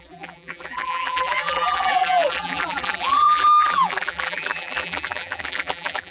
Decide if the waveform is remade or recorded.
remade